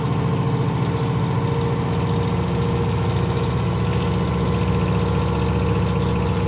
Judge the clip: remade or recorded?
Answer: recorded